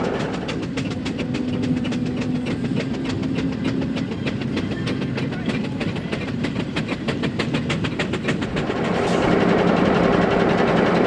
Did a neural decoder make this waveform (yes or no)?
no